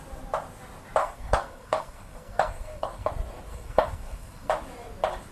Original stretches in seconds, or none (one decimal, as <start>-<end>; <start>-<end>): 0.0-1.0; 3.1-3.5; 4.5-5.3